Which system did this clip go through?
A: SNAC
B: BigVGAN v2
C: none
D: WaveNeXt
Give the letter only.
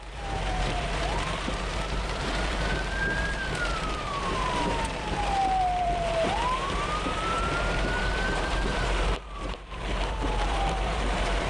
B